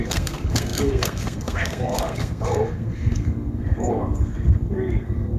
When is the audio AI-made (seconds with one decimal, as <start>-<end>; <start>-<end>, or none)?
0.0-5.4